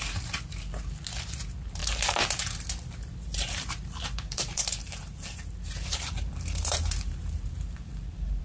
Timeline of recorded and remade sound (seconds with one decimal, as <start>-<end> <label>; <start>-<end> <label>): 0.0-1.8 recorded; 1.8-2.7 remade; 2.7-3.3 recorded; 3.3-8.4 remade